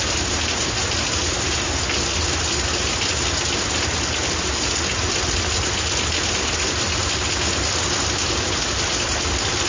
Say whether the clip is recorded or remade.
recorded